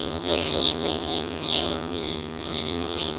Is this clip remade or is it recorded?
remade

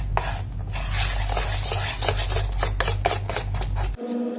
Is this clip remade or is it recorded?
recorded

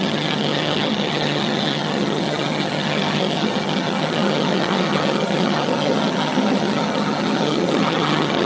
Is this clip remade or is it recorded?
remade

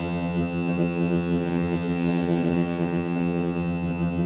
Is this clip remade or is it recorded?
remade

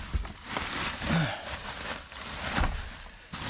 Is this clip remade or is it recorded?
recorded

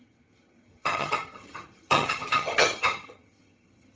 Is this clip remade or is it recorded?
remade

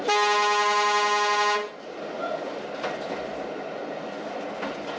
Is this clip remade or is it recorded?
recorded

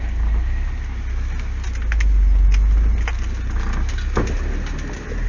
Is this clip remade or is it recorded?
recorded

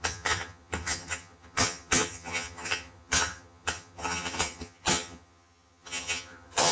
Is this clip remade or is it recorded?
remade